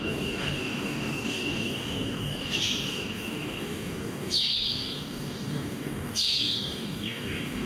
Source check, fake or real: fake